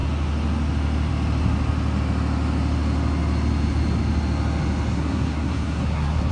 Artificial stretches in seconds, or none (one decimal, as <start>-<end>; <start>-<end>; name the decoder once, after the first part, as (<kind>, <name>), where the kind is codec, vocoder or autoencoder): 4.9-6.3 (codec, SNAC)